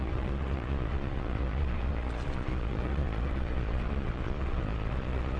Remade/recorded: remade